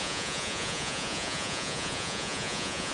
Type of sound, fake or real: fake